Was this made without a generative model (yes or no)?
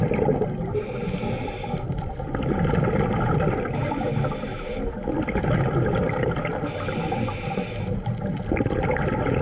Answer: yes